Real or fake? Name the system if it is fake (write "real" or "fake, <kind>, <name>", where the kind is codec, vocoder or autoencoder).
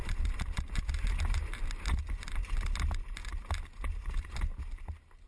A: real